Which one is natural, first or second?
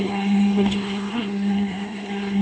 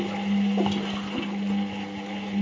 second